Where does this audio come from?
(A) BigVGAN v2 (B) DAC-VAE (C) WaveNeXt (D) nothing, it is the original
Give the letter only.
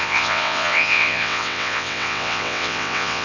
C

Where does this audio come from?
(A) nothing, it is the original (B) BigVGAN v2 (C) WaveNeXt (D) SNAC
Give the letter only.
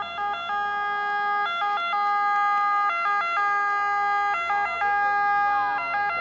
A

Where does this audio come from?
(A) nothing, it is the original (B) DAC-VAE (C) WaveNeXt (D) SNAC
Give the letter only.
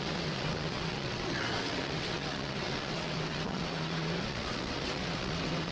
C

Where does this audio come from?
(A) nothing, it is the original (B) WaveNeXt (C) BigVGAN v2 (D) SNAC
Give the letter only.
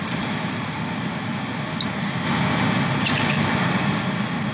A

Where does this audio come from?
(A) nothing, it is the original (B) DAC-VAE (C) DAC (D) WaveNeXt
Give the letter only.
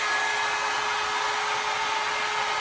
A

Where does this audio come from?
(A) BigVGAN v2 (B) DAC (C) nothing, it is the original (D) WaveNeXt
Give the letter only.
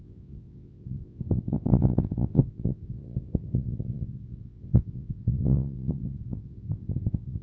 D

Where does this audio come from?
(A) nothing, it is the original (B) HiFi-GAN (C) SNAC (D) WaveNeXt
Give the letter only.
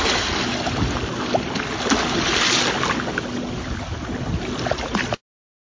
A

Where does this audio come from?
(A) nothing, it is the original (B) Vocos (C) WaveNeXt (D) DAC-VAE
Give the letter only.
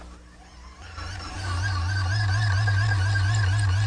A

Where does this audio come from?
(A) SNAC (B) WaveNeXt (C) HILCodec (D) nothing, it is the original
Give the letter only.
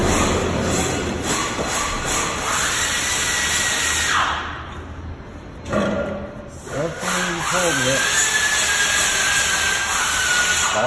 D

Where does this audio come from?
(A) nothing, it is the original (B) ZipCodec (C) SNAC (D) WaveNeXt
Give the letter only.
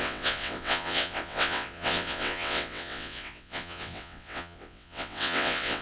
D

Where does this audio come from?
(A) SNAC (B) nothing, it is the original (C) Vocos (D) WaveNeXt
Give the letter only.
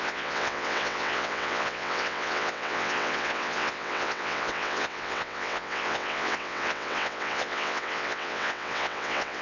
D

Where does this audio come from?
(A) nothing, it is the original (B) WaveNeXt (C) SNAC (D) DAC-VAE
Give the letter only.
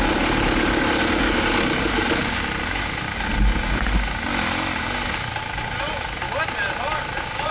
A